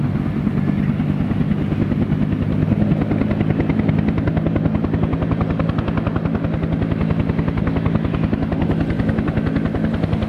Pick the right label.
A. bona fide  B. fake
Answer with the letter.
A